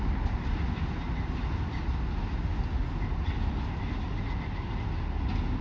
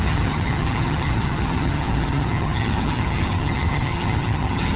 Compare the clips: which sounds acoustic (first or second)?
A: first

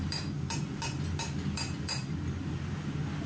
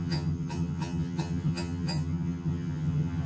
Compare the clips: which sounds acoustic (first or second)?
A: first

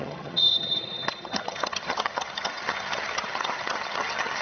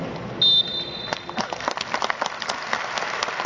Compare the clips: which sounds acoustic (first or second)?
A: second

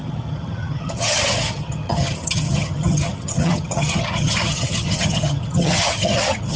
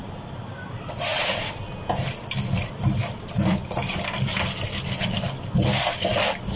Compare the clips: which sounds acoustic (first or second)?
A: second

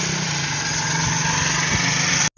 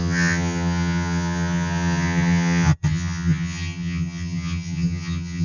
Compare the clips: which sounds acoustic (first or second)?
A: first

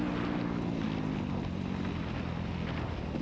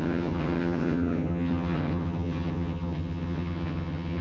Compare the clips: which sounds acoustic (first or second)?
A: first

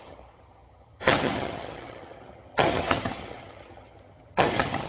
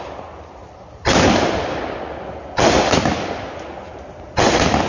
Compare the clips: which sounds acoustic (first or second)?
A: second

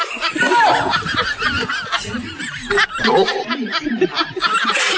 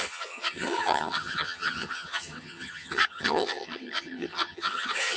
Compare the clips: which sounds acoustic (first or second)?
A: first